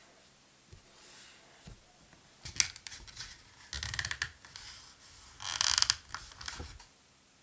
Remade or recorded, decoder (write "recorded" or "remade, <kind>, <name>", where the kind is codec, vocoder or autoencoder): recorded